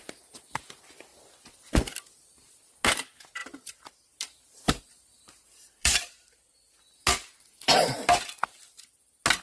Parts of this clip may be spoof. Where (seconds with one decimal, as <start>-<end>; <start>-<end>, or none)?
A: 3.4-6.5